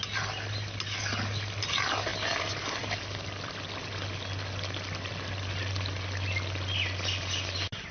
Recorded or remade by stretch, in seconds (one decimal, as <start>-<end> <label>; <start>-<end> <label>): 0.0-7.9 recorded